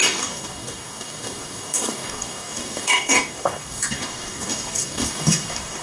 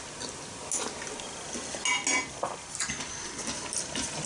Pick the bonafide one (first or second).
second